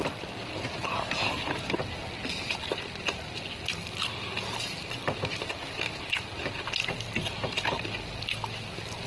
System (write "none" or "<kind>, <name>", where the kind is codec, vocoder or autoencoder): vocoder, BigVGAN v2